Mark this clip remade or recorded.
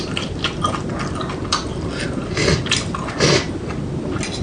recorded